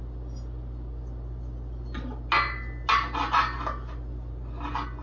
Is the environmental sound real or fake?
real